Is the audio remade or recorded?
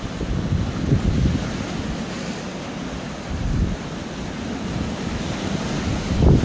recorded